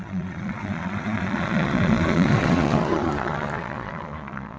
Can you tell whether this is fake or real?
fake